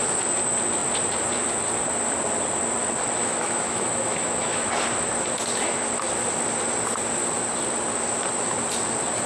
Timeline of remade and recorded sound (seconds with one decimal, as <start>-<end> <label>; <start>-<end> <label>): 0.0-3.2 recorded; 3.2-4.7 remade; 4.7-9.3 recorded